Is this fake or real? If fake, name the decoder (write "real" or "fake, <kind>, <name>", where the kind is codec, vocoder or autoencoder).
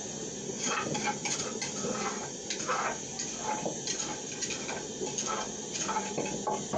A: real